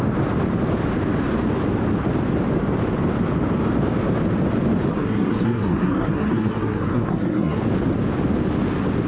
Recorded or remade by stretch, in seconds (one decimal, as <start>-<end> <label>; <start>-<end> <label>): 0.0-4.9 recorded; 4.9-7.6 remade; 7.6-9.1 recorded